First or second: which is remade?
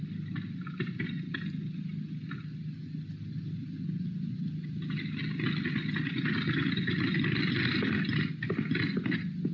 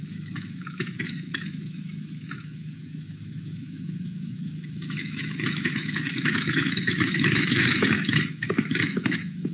second